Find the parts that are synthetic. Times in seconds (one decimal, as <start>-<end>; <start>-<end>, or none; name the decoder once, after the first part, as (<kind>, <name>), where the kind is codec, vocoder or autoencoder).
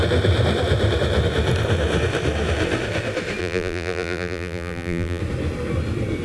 3.4-5.2 (vocoder, BigVGAN v2)